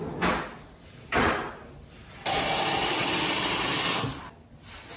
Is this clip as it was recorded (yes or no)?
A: yes